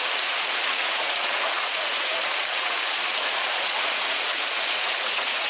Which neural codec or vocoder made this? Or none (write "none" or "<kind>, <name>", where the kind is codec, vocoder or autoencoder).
vocoder, Vocos